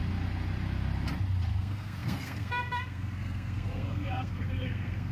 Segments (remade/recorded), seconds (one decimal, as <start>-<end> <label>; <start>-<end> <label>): 0.0-1.6 recorded; 1.6-5.1 remade